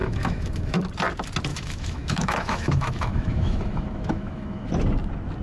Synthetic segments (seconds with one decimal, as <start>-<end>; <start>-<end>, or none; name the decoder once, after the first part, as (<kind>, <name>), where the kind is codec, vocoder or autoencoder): 0.0-0.8 (autoencoder, DAC-VAE); 1.5-4.7